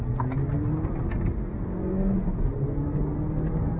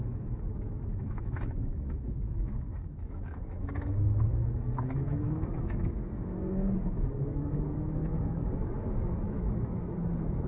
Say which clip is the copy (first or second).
second